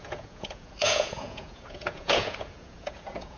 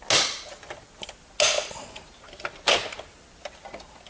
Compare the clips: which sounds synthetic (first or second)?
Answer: first